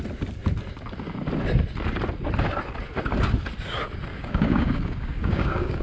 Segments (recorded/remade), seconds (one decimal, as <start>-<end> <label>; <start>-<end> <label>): 0.0-4.1 recorded; 4.1-5.8 remade